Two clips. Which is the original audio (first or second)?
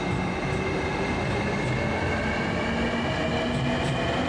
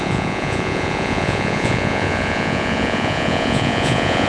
first